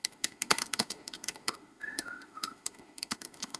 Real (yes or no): no